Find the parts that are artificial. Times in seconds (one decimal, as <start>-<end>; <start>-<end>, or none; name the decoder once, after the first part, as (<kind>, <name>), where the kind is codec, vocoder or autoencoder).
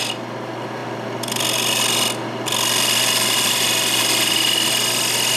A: none